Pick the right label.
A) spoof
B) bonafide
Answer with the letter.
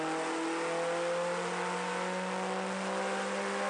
B